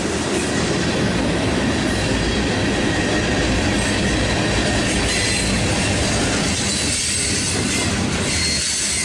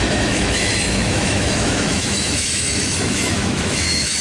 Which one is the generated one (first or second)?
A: second